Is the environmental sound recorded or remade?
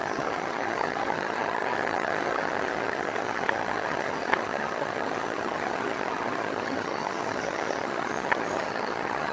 remade